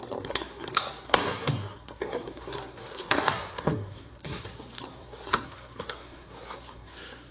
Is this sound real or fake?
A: fake